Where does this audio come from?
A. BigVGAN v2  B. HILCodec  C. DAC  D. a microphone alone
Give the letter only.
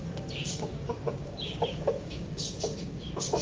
C